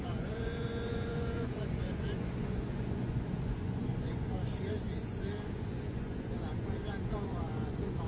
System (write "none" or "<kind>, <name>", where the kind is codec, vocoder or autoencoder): vocoder, Vocos